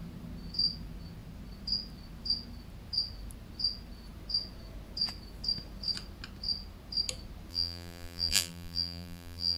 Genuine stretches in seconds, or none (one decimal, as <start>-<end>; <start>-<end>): 0.0-7.5

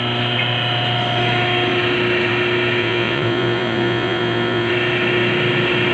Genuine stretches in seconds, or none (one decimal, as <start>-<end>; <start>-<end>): 0.0-2.8; 4.7-5.9

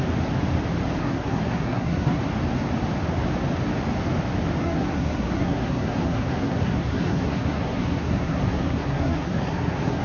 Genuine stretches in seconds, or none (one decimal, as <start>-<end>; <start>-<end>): 0.0-1.0; 2.2-4.6